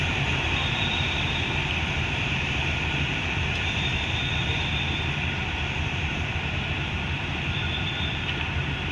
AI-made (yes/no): yes